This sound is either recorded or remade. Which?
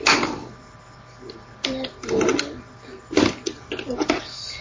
recorded